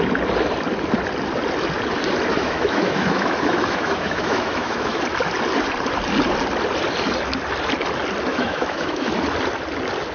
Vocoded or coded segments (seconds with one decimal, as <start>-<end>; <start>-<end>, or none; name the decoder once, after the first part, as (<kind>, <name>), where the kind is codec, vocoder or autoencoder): 2.3-5.0 (autoencoder, DAC-VAE); 8.3-9.1